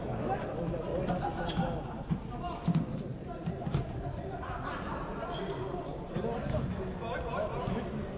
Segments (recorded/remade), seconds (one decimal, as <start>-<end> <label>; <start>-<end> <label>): 0.0-8.2 recorded